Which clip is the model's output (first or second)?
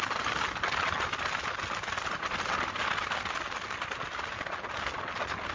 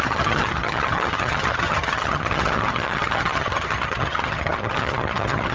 second